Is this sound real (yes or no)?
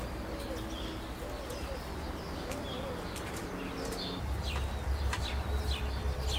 yes